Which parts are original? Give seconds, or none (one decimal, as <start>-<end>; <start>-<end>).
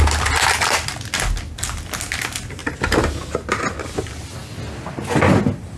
0.0-5.8